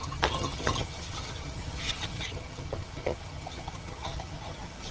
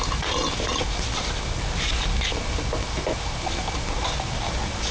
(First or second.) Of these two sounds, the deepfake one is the first